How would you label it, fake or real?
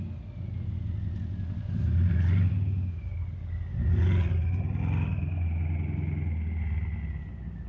real